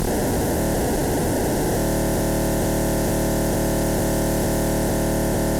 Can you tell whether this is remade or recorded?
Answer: recorded